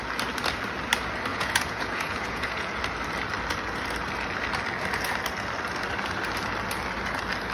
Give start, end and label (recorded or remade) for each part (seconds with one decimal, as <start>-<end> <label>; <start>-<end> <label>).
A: 0.0-1.3 recorded; 1.3-2.8 remade; 2.8-7.5 recorded